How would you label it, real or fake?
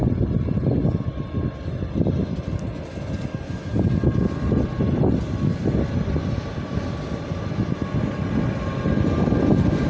real